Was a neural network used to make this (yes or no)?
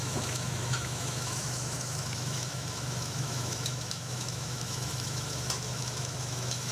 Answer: yes